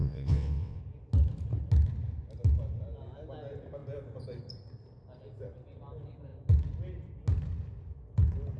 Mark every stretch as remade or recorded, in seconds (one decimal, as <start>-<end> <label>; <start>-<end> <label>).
0.0-0.8 remade; 0.8-8.6 recorded

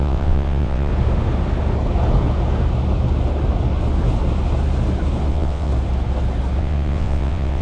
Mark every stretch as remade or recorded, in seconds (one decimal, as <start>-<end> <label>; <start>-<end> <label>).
0.0-0.9 remade; 0.9-5.3 recorded; 5.3-5.7 remade; 5.7-6.6 recorded; 6.6-7.6 remade

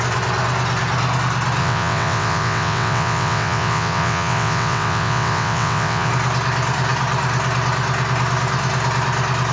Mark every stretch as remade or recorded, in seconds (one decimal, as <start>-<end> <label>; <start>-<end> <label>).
0.0-1.6 recorded; 1.6-6.1 remade; 6.1-9.5 recorded